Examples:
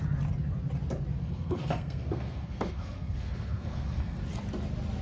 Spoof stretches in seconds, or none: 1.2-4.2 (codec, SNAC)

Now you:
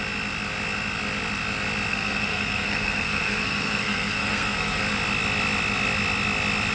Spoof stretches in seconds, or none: 1.9-4.8 (codec, SNAC)